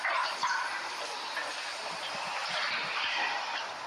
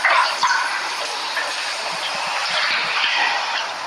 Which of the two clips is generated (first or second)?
second